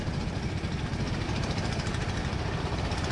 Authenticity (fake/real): real